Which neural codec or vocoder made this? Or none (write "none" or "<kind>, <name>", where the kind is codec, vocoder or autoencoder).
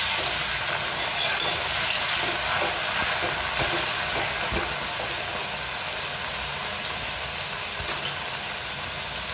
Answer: none